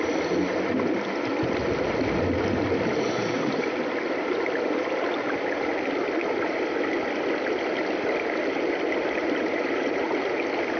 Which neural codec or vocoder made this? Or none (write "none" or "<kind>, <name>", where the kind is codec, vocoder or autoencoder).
none